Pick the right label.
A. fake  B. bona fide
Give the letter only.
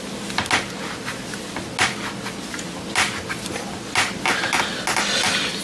B